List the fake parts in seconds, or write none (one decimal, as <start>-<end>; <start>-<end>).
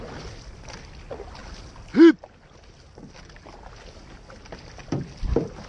none